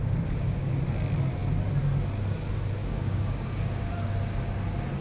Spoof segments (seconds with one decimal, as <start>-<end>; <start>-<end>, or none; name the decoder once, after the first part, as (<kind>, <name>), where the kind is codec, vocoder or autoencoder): 0.0-0.7 (codec, DAC); 2.8-3.9